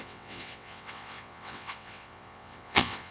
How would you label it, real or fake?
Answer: fake